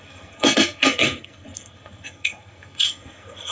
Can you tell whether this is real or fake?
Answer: fake